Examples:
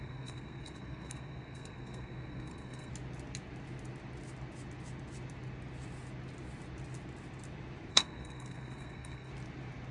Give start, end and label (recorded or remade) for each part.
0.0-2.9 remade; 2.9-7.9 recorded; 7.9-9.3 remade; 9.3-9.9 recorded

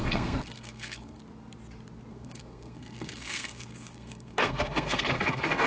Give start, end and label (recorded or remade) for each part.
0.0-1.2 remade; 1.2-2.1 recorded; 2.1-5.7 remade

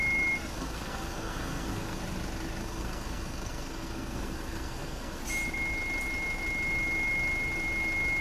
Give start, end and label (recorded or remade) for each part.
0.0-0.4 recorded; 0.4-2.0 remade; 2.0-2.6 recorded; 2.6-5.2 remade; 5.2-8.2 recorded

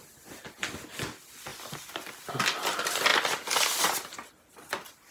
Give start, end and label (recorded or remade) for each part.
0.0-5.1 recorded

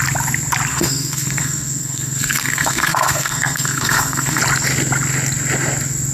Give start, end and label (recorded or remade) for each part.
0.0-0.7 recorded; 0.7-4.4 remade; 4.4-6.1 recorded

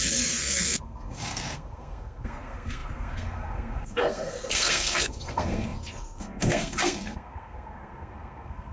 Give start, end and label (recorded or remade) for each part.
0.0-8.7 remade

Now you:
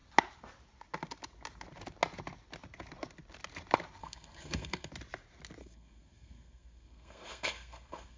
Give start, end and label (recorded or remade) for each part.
0.0-4.0 recorded; 4.0-4.9 remade; 4.9-5.6 recorded; 5.6-8.2 remade

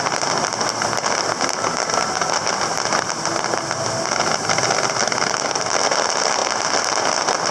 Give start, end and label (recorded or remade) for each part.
0.0-7.5 recorded